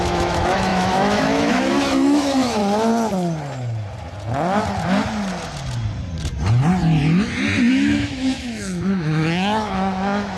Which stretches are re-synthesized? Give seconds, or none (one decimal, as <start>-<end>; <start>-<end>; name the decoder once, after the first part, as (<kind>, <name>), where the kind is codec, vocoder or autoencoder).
0.0-2.6 (autoencoder, DAC-VAE); 7.7-10.4